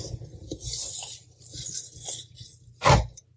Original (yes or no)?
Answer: yes